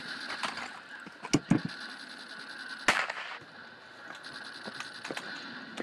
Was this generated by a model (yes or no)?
no